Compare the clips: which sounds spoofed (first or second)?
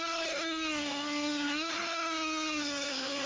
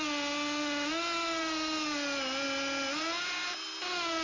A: first